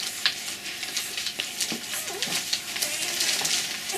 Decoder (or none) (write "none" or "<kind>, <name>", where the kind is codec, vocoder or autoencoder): none